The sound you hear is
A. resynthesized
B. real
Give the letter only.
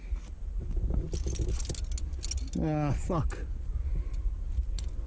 B